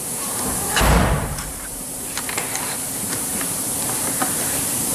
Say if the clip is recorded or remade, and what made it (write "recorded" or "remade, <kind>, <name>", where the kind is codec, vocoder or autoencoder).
remade, vocoder, BigVGAN v2